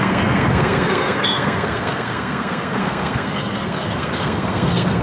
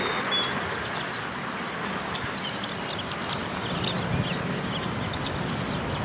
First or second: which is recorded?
second